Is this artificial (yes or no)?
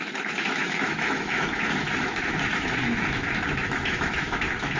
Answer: yes